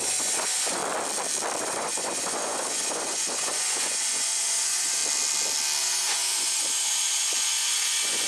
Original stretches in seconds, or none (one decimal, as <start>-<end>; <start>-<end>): 0.8-1.6; 5.0-5.8